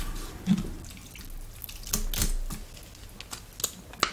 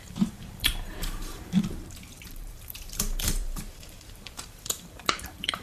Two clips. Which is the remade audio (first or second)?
second